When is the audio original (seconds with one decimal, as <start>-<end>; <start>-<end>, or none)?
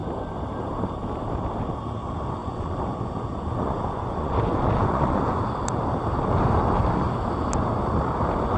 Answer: 0.0-2.4; 5.4-8.6